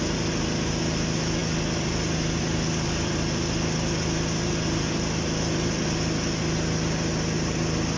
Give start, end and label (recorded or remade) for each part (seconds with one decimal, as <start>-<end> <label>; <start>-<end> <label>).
0.0-8.0 recorded